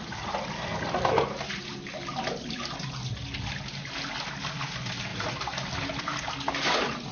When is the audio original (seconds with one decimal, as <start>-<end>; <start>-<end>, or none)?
0.0-7.1